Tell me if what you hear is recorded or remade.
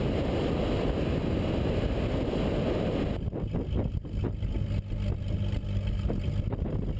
recorded